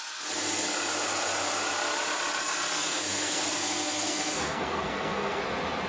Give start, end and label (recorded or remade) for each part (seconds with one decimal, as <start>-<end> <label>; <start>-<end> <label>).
0.0-3.1 recorded; 3.1-5.4 remade; 5.4-5.9 recorded